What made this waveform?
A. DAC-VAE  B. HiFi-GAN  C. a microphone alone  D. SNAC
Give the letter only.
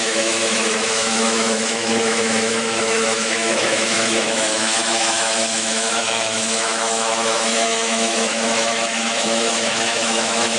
A